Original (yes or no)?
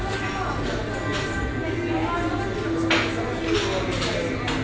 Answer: yes